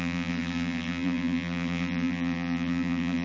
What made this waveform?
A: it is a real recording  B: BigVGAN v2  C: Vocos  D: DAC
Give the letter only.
B